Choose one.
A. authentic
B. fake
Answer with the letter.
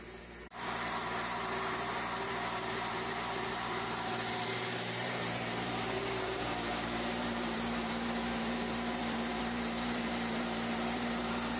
B